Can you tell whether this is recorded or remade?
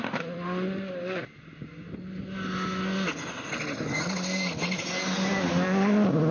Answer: recorded